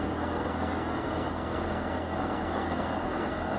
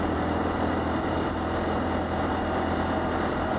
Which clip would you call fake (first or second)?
first